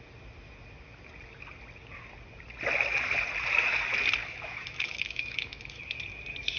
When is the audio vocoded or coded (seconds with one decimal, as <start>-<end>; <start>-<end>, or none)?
4.2-5.8